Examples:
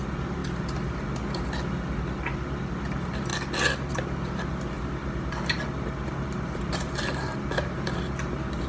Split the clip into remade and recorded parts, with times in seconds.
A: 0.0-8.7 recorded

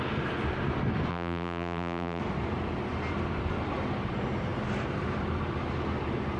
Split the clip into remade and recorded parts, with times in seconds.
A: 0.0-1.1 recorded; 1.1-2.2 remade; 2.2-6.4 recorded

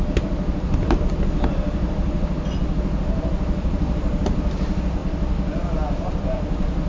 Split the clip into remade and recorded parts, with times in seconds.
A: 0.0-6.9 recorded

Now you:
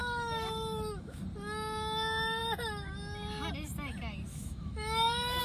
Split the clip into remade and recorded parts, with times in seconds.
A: 0.0-1.2 remade; 1.2-4.3 recorded; 4.3-5.4 remade